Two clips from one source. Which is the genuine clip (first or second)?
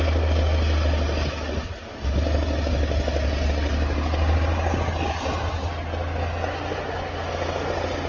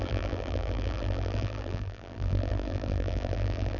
first